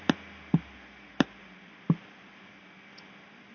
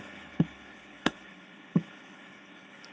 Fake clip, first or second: second